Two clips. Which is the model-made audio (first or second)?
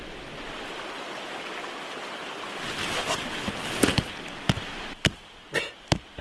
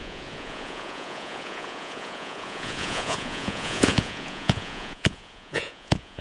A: second